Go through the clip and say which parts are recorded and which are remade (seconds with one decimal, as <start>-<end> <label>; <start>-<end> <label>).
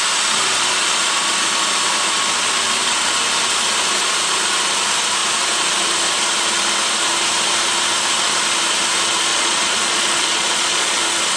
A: 0.0-9.3 recorded; 9.3-11.0 remade; 11.0-11.4 recorded